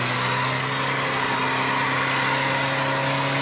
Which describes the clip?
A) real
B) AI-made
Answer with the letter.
A